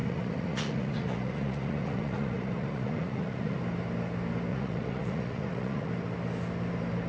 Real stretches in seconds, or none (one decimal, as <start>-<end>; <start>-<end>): 3.6-4.5; 5.9-7.1